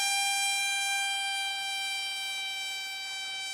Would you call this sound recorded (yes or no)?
yes